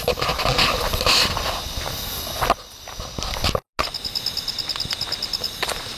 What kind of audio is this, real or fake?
real